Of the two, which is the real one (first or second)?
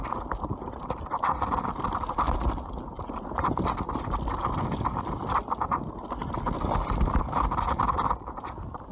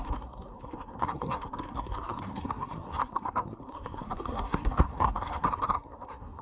first